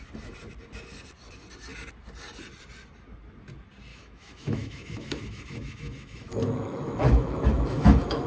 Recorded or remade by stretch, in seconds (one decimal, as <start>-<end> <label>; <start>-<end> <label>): 0.0-3.9 recorded; 3.9-8.3 remade